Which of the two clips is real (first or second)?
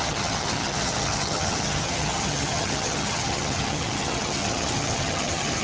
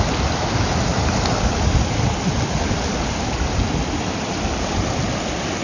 second